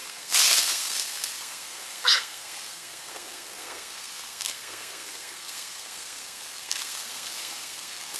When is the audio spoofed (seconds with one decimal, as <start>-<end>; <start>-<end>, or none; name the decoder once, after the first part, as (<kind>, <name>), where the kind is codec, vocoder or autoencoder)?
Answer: 0.0-8.2 (codec, SNAC)